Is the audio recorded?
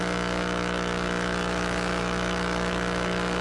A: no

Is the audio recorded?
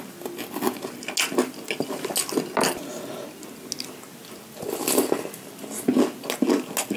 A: yes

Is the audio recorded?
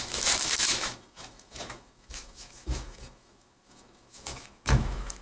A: no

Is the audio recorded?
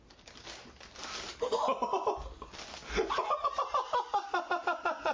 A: yes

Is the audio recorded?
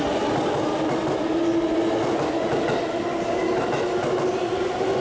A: yes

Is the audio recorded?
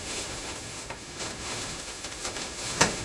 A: no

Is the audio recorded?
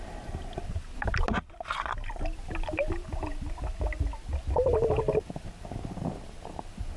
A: yes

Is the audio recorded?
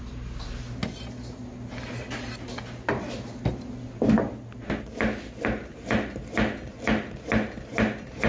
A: yes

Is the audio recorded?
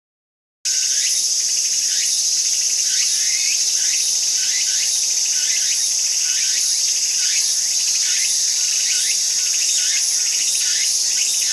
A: yes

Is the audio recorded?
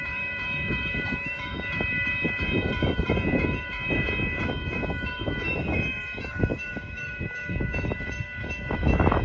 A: no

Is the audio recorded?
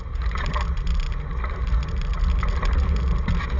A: yes